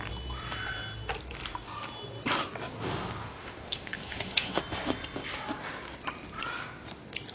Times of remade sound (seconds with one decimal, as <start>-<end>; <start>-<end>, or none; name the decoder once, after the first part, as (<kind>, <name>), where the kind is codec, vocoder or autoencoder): 3.2-4.6 (autoencoder, DAC-VAE)